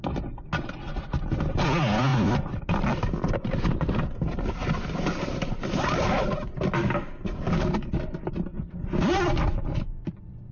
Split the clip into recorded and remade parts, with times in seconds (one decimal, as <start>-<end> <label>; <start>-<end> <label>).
0.0-10.5 recorded